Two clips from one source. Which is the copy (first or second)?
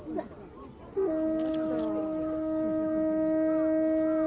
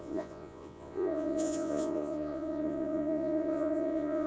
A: second